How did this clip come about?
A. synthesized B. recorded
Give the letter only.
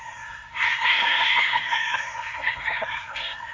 A